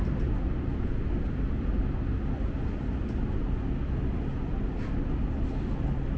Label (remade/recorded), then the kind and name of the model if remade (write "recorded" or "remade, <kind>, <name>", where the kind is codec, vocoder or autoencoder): recorded